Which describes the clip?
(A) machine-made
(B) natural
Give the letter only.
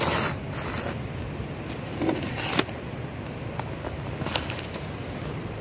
B